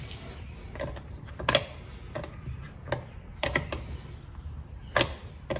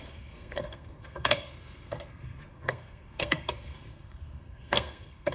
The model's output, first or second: second